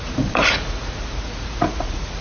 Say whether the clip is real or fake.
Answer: fake